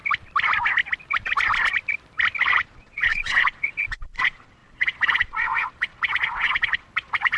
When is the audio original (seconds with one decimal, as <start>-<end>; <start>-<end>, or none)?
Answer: 0.0-2.5